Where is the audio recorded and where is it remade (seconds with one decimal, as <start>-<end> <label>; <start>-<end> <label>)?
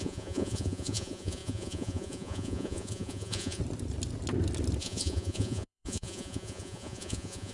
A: 0.0-3.6 remade; 3.6-4.8 recorded; 4.8-7.5 remade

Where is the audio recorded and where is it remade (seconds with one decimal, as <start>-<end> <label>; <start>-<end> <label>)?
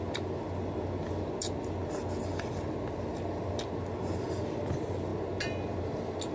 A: 0.0-6.3 recorded